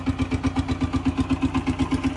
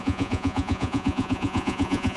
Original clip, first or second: first